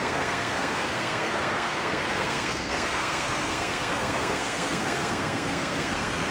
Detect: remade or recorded remade